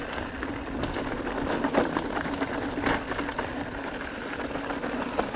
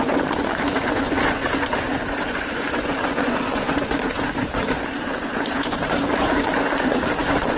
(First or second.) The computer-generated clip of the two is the second